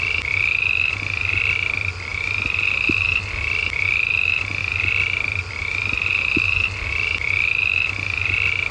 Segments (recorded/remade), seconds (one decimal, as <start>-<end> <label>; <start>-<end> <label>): 0.0-8.7 recorded